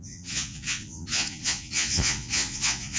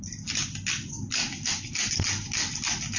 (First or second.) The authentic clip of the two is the second